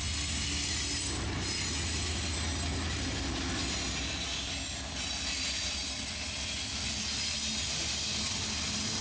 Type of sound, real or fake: real